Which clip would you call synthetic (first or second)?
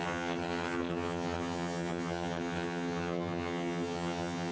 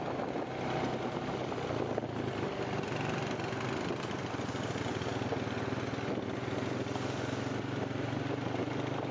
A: first